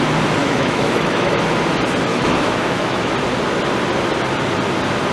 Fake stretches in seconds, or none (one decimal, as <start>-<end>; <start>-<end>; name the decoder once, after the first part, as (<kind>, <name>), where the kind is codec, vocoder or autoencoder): 0.4-1.4 (autoencoder, DAC-VAE); 2.1-3.1